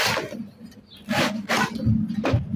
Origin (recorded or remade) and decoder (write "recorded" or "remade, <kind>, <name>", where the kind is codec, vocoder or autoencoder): recorded